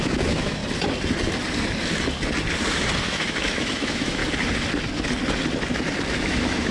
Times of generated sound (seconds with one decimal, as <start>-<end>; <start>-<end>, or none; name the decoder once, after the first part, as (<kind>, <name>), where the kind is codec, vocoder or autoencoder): 0.0-0.6 (autoencoder, DAC-VAE); 3.0-4.2; 6.1-6.7